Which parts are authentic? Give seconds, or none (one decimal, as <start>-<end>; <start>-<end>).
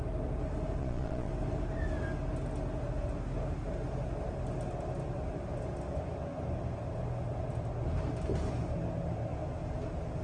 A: 0.0-0.8; 1.3-10.2